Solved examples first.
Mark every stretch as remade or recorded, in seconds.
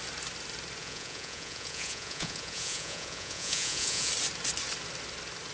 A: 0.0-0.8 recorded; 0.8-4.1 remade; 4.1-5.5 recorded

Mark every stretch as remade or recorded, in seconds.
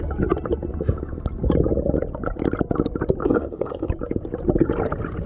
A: 0.0-3.2 recorded; 3.2-3.9 remade; 3.9-5.3 recorded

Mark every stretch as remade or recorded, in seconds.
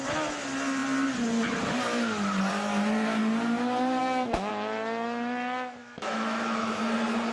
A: 0.0-4.0 recorded; 4.0-4.5 remade; 4.5-5.8 recorded; 5.8-6.8 remade; 6.8-7.3 recorded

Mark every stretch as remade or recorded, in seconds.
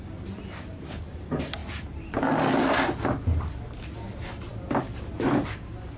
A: 0.0-6.0 recorded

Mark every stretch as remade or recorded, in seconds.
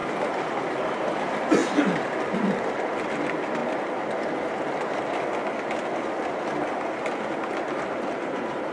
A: 0.0-8.7 recorded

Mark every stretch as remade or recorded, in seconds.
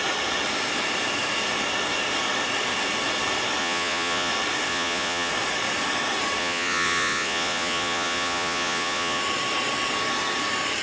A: 0.0-3.6 recorded; 3.6-4.3 remade; 4.3-4.7 recorded; 4.7-5.3 remade; 5.3-6.4 recorded; 6.4-9.2 remade; 9.2-10.8 recorded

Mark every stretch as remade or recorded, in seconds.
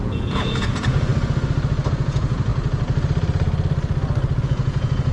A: 0.0-1.1 remade; 1.1-1.9 recorded; 1.9-2.5 remade; 2.5-4.4 recorded; 4.4-5.1 remade